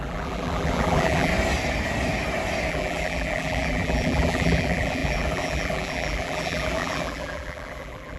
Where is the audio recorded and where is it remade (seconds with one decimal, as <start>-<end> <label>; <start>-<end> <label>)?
0.0-1.3 remade; 1.3-2.7 recorded; 2.7-8.2 remade